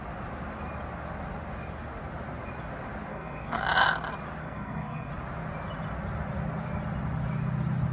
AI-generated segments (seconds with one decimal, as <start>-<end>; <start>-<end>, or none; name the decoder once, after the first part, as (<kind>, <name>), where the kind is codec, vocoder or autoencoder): 3.1-3.6 (codec, SNAC); 4.4-5.1